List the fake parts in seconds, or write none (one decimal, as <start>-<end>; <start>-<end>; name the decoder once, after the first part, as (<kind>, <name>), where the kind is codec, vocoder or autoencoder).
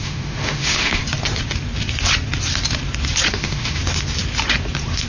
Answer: 0.0-1.0 (autoencoder, DAC-VAE); 3.3-3.8